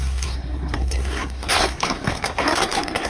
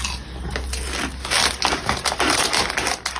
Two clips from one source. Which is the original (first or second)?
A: second